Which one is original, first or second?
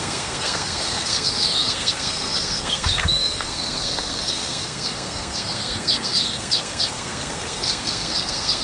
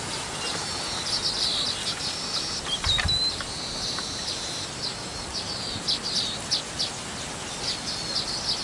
second